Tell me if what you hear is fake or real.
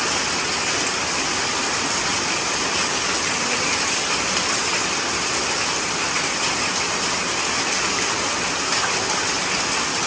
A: real